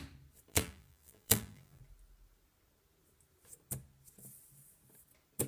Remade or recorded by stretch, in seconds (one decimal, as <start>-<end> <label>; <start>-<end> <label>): 0.0-0.5 recorded; 0.5-1.8 remade; 1.8-5.5 recorded